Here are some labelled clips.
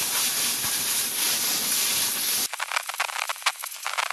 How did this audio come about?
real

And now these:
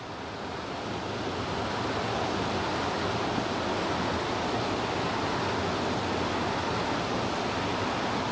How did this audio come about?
real